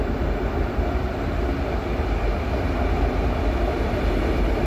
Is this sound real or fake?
real